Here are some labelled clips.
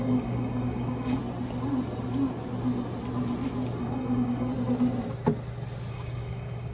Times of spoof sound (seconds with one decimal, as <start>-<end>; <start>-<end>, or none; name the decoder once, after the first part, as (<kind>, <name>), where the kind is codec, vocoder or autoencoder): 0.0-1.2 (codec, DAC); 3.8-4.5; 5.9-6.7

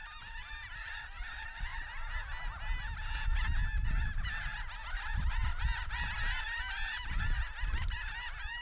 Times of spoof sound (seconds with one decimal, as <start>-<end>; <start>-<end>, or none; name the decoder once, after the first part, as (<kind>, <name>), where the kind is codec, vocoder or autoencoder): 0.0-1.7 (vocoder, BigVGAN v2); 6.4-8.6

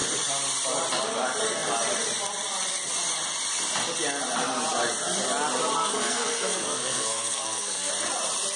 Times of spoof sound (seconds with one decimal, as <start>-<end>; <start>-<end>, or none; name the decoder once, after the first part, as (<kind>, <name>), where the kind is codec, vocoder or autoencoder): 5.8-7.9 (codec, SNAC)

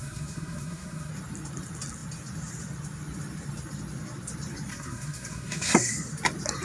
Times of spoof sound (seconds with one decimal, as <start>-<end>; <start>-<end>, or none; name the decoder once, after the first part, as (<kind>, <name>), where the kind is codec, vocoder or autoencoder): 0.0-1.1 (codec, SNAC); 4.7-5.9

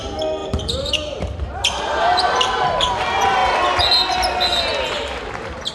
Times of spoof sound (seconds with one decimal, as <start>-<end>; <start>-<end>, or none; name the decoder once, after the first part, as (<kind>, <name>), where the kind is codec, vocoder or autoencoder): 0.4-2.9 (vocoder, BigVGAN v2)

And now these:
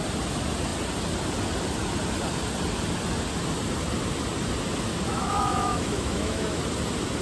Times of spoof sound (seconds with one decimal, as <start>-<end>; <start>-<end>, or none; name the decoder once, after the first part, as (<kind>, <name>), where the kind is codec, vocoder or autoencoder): 5.1-6.6 (autoencoder, DAC-VAE)

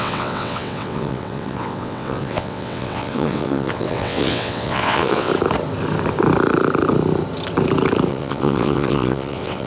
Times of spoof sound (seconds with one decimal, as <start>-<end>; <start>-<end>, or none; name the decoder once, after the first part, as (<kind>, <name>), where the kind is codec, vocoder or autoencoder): 0.0-5.3 (vocoder, WaveNeXt); 8.1-9.7

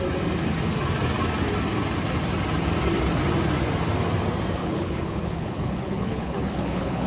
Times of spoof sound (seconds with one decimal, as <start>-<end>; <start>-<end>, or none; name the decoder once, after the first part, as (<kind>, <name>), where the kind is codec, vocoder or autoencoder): 4.6-7.1 (codec, HILCodec)